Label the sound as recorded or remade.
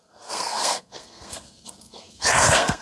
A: remade